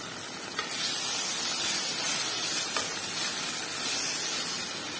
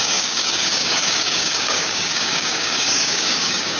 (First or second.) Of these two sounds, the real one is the first